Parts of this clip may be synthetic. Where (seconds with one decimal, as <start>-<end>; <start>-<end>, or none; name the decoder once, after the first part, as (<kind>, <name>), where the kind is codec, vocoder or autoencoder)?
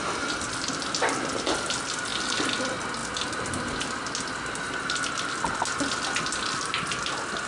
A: none